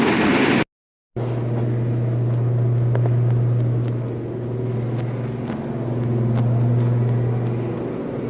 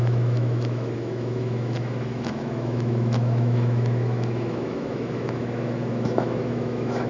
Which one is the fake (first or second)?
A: second